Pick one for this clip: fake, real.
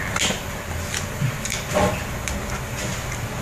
real